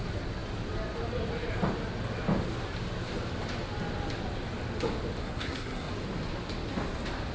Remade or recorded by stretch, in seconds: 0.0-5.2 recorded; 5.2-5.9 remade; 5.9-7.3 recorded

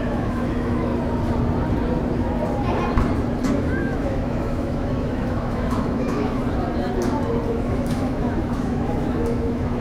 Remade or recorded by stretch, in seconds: 0.0-0.9 remade; 0.9-3.5 recorded; 3.5-6.4 remade; 6.4-7.5 recorded; 7.5-9.8 remade

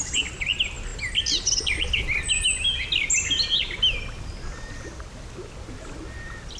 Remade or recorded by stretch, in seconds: 0.0-6.6 recorded